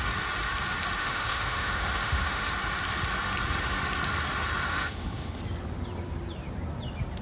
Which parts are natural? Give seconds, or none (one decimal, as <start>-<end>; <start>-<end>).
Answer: 0.0-1.0; 2.5-4.7; 5.4-7.2